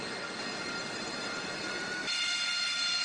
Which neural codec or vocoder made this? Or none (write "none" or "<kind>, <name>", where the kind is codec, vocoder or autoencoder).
none